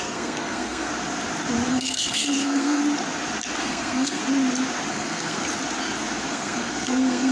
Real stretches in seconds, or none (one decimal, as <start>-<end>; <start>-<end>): 0.9-1.7; 2.8-3.6; 4.2-4.9; 5.4-6.3